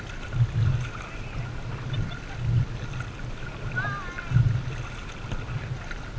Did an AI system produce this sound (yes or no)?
no